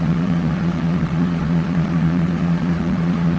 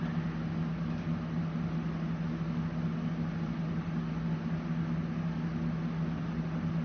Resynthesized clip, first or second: first